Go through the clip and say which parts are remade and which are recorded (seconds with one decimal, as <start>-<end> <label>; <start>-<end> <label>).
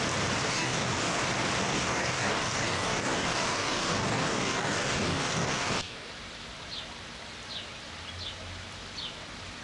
0.0-0.5 recorded; 0.5-1.2 remade; 1.2-1.6 recorded; 1.6-6.1 remade; 6.1-9.6 recorded